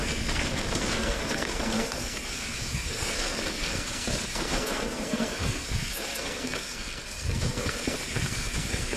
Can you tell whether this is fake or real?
fake